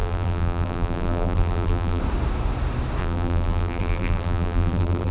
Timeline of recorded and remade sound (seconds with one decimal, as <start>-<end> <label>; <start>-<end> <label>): 0.0-2.0 remade; 2.0-3.0 recorded; 3.0-5.1 remade